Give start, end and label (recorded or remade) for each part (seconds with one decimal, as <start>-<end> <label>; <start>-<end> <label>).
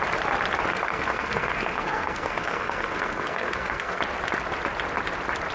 0.0-0.7 recorded; 0.7-4.0 remade; 4.0-5.5 recorded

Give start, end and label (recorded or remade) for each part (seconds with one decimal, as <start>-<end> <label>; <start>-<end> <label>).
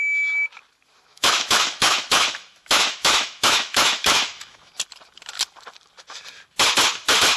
0.0-1.1 recorded; 1.1-4.7 remade; 4.7-7.4 recorded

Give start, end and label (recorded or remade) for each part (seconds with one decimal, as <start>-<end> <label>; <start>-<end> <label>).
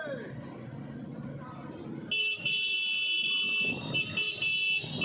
0.0-2.2 recorded; 2.2-4.0 remade; 4.0-5.0 recorded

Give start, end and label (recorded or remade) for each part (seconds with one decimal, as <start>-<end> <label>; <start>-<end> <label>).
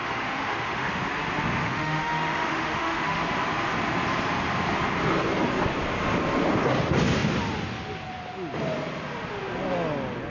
0.0-1.0 remade; 1.0-1.6 recorded; 1.6-3.2 remade; 3.2-10.3 recorded